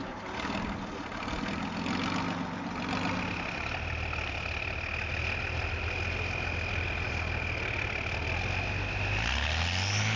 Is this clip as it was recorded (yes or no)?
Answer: yes